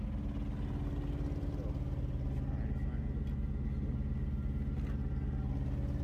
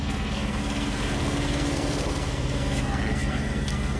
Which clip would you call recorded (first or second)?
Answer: first